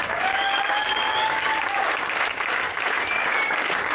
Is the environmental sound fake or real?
fake